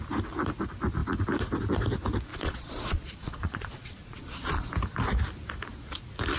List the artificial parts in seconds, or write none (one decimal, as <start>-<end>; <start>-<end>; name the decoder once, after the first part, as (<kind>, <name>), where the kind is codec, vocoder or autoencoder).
2.3-4.7 (vocoder, Vocos)